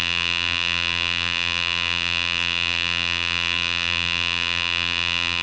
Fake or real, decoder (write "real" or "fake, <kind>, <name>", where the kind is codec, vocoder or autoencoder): fake, vocoder, BigVGAN v2